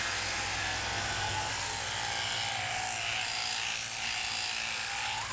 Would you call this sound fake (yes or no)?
no